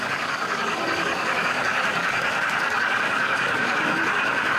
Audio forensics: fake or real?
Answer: fake